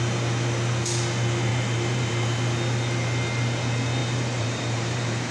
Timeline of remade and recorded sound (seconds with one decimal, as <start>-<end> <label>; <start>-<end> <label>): 0.0-1.5 recorded; 1.5-2.4 remade; 2.4-4.0 recorded; 4.0-5.3 remade